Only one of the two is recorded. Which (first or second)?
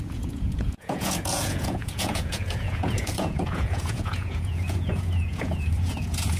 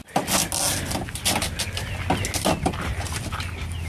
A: second